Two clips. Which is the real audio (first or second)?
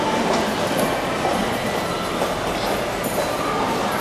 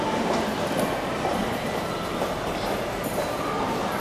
first